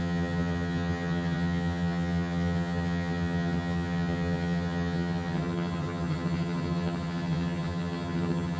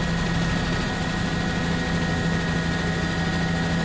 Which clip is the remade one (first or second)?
first